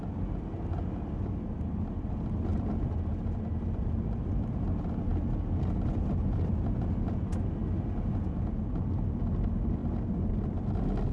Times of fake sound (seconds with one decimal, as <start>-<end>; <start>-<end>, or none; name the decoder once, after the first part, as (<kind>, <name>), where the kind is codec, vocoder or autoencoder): none